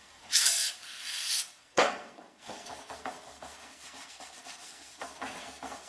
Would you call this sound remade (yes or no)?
yes